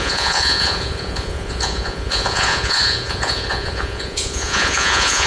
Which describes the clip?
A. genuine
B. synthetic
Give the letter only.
B